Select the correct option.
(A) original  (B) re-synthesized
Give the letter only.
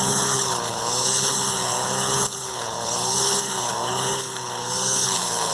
B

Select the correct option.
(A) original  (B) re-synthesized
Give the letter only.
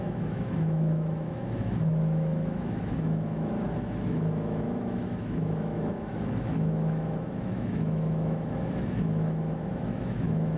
B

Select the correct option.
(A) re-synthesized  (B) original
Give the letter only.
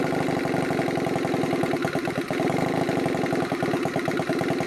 B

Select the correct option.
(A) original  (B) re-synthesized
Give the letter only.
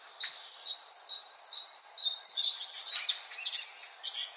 A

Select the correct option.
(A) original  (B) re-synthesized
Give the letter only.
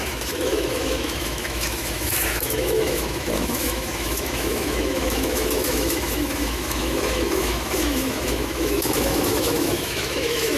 B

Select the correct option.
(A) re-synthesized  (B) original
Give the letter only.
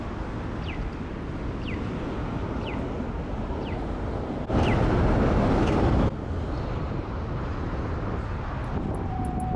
B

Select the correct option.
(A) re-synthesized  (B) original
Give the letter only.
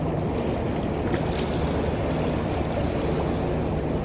B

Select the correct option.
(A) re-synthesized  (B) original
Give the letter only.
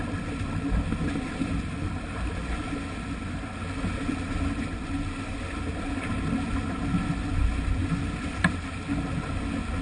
B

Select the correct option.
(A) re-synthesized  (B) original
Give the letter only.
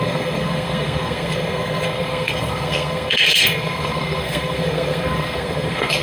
A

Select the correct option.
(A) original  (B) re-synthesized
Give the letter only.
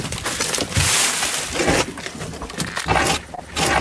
A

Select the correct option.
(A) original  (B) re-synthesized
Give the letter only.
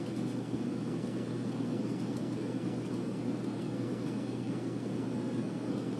B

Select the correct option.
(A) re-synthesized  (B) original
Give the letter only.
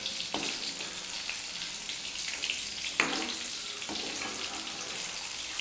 B